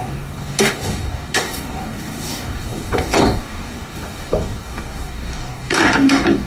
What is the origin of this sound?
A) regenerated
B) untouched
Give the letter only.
A